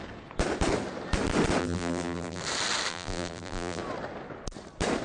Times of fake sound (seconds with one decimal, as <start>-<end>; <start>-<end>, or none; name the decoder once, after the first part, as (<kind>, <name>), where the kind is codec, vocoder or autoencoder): 1.6-2.4 (vocoder, BigVGAN v2); 2.9-3.8